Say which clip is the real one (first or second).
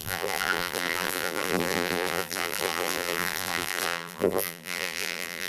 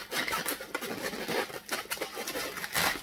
second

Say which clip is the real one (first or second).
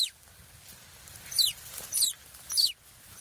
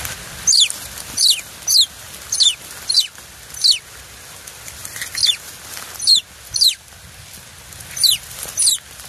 second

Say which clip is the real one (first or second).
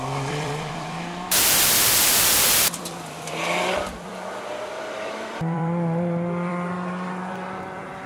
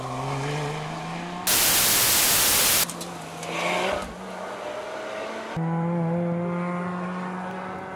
second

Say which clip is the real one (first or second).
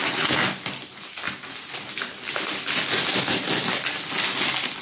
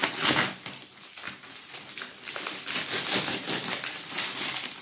first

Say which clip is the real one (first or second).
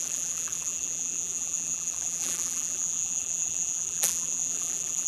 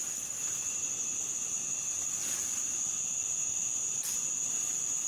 second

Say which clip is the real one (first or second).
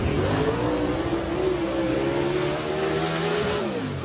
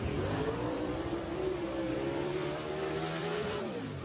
first